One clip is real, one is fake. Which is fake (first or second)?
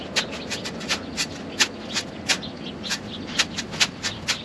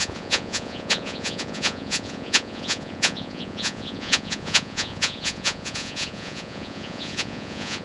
second